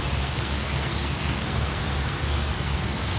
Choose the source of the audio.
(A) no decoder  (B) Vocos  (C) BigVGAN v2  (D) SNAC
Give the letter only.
D